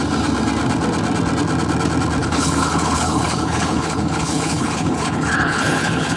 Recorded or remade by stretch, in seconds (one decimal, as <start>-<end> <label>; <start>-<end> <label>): 0.0-2.2 recorded; 2.2-6.2 remade